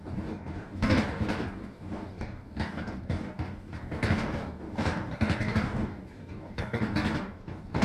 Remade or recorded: remade